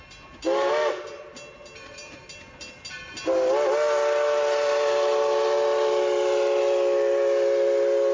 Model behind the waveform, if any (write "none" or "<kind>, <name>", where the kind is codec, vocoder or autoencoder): none